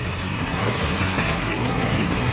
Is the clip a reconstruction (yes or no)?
yes